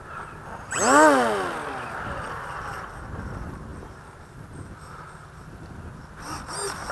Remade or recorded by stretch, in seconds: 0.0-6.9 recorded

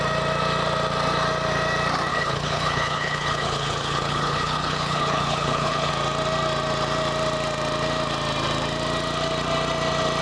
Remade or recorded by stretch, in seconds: 0.0-2.1 recorded; 2.1-5.9 remade; 5.9-10.2 recorded